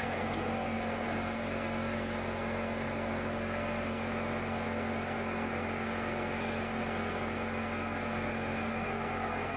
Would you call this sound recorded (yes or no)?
no